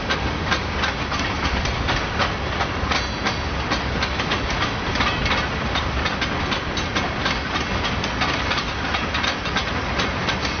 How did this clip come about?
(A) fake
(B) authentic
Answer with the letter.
B